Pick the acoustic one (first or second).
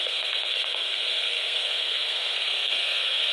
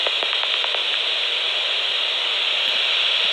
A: second